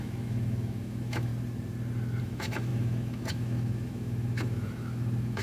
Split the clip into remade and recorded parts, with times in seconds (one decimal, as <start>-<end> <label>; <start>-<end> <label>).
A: 0.0-1.3 remade; 1.3-2.2 recorded; 2.2-5.4 remade